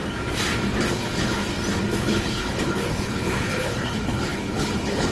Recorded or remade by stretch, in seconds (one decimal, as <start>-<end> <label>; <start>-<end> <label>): 0.0-0.9 recorded; 0.9-1.4 remade; 1.4-2.0 recorded; 2.0-5.1 remade